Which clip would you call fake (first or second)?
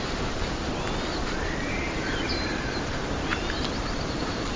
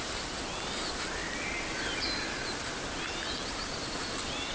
first